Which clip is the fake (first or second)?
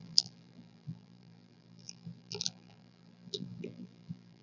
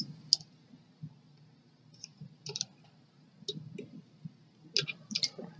first